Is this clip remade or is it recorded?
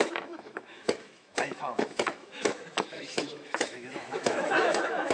remade